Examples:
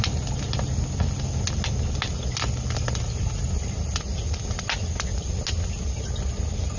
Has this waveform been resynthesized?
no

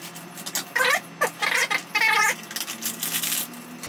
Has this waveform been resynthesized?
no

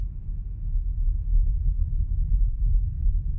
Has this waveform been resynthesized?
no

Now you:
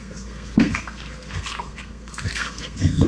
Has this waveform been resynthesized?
yes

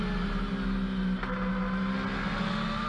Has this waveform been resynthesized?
no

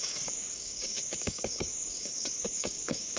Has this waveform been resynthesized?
yes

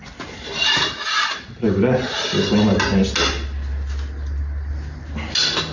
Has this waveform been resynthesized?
no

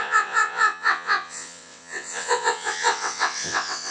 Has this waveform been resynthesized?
yes